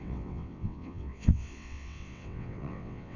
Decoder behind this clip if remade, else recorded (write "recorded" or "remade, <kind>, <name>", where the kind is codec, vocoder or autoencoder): remade, vocoder, WaveNeXt